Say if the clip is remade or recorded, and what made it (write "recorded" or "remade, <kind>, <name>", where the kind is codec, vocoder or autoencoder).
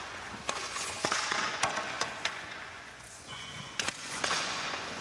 remade, vocoder, Vocos